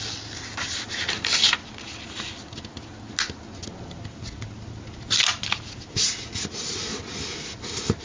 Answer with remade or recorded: recorded